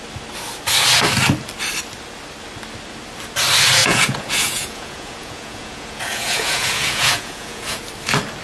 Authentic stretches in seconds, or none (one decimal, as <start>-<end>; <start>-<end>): 0.0-3.8; 7.8-8.4